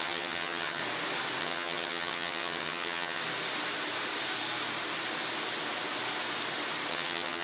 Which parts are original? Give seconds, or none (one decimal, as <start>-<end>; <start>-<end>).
0.8-1.4; 3.2-6.9